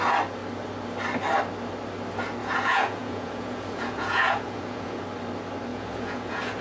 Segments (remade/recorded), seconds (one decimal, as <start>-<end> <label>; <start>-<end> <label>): 0.0-2.4 recorded; 2.4-5.0 remade; 5.0-5.7 recorded; 5.7-6.6 remade